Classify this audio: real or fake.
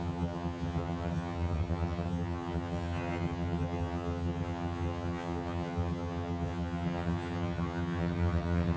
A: fake